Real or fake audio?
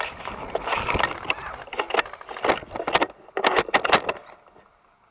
real